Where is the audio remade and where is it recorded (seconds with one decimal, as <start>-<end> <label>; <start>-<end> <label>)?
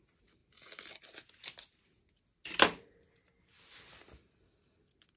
0.0-5.2 recorded